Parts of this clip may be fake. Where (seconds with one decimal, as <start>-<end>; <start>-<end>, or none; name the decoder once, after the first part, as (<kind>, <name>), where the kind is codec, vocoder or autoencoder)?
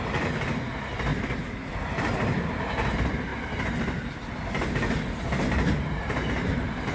none